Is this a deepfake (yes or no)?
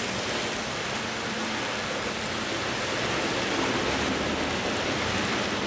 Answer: no